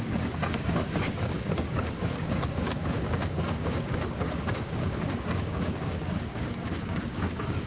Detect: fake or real fake